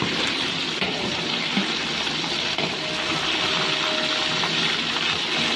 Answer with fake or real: fake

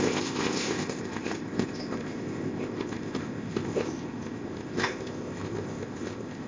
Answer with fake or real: fake